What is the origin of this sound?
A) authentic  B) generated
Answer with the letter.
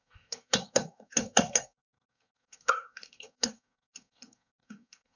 B